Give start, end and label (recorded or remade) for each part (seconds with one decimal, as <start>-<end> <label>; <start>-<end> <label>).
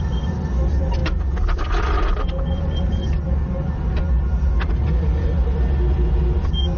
0.0-6.8 recorded